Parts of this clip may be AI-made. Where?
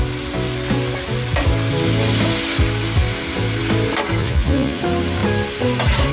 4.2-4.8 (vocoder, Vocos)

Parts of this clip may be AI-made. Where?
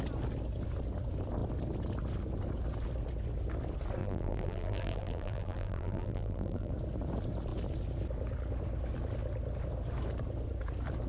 4.0-6.7 (vocoder, BigVGAN v2)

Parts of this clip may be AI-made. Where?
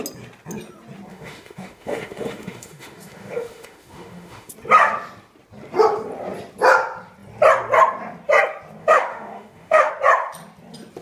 1.1-4.5 (autoencoder, DAC-VAE); 8.8-9.9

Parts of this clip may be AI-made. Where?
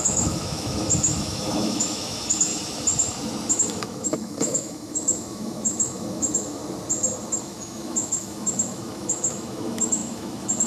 0.0-2.5 (autoencoder, DAC-VAE); 3.5-6.6; 7.4-10.7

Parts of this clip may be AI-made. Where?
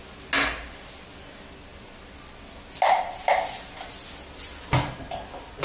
none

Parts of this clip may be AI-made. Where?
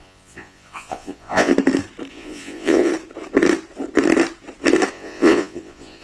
0.0-1.5 (vocoder, Vocos); 2.1-2.9; 4.9-6.0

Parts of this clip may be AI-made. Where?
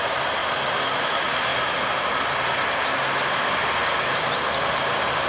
0.0-0.4 (vocoder, BigVGAN v2); 1.0-1.5; 4.7-5.3